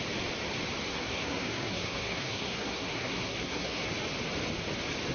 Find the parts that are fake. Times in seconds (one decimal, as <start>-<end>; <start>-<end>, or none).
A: 0.9-3.9